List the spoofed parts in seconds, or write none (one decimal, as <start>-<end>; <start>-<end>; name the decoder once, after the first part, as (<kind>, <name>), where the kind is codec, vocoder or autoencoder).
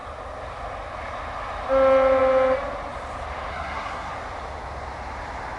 3.5-4.1 (codec, SNAC)